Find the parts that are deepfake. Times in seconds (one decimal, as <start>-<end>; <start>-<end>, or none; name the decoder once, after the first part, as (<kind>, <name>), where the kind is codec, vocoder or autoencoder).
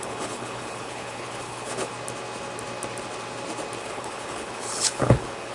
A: 0.0-1.9 (codec, HILCodec); 3.8-5.5